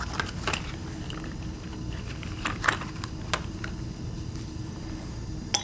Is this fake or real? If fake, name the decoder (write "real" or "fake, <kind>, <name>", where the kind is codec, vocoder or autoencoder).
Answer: real